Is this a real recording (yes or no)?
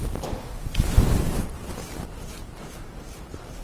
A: no